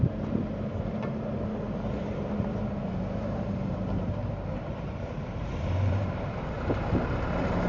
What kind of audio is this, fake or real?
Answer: fake